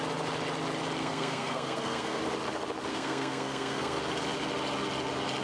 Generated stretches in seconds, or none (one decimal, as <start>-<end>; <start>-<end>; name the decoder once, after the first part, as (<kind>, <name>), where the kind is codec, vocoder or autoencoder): 1.0-2.2 (codec, SNAC); 2.9-4.0